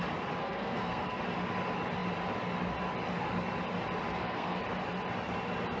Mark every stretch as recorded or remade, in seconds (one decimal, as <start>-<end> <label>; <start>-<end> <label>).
0.0-0.4 recorded; 0.4-1.2 remade; 1.2-4.1 recorded; 4.1-4.6 remade; 4.6-5.8 recorded